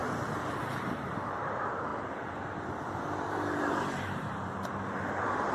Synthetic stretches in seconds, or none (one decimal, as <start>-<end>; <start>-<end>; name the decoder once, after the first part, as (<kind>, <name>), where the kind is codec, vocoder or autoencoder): 0.6-5.5 (vocoder, BigVGAN v2)